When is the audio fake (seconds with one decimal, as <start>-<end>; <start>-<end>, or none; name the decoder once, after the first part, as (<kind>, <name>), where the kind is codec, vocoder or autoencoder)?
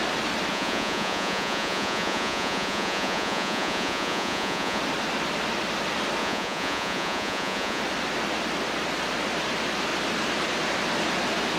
0.5-4.8 (vocoder, Vocos); 6.2-7.8